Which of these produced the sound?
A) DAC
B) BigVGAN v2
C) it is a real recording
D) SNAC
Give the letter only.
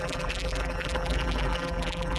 B